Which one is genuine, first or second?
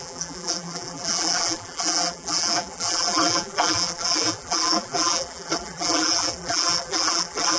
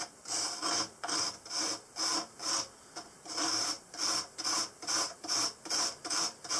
second